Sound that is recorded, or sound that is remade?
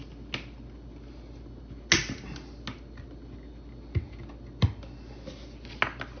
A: recorded